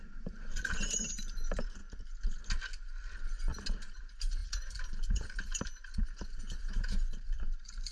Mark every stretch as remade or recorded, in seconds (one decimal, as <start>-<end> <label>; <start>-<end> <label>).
0.0-1.8 remade; 1.8-3.7 recorded; 3.7-7.9 remade